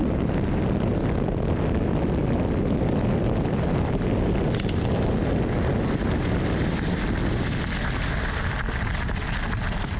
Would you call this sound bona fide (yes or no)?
yes